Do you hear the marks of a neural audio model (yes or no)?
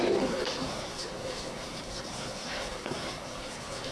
yes